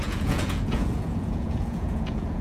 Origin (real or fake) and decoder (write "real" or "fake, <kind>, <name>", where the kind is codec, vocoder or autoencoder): fake, vocoder, Vocos